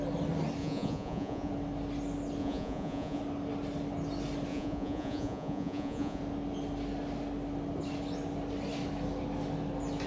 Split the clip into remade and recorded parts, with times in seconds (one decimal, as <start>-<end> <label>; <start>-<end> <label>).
0.0-0.6 recorded; 0.6-1.5 remade; 1.5-2.4 recorded; 2.4-3.2 remade; 3.2-4.5 recorded; 4.5-6.2 remade; 6.2-10.1 recorded